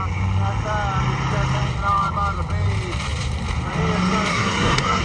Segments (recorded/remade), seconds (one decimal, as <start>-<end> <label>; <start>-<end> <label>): 0.0-4.3 recorded; 4.3-5.0 remade